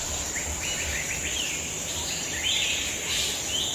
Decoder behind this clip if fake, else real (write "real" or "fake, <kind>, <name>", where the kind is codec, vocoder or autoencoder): real